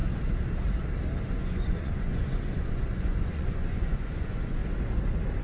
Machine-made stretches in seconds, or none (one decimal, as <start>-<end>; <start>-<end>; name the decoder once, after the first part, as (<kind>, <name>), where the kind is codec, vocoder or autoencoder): 1.3-4.6 (vocoder, Vocos)